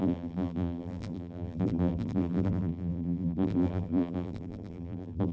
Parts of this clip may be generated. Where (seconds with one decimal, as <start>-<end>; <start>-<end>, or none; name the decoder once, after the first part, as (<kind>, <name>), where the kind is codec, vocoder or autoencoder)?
0.0-5.3 (vocoder, BigVGAN v2)